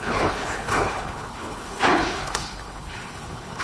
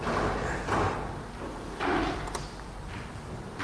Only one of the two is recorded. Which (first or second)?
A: second